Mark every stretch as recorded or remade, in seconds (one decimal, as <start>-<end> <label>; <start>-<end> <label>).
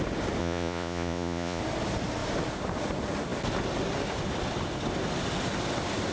0.0-0.4 recorded; 0.4-1.6 remade; 1.6-6.1 recorded